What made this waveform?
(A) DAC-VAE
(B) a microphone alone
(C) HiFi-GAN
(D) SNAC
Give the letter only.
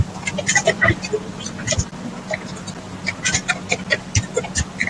B